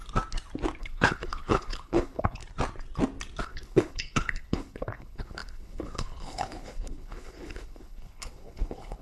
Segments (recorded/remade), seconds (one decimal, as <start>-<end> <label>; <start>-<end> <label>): 0.0-0.8 recorded; 0.8-2.4 remade; 2.4-3.4 recorded; 3.4-9.0 remade